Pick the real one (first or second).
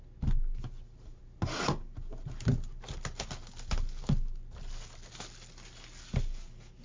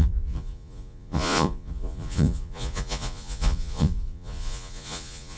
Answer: first